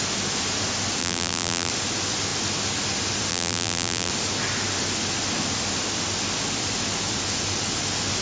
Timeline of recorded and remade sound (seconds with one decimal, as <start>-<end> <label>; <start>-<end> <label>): 0.0-1.0 recorded; 1.0-1.7 remade; 1.7-3.3 recorded; 3.3-4.1 remade; 4.1-8.2 recorded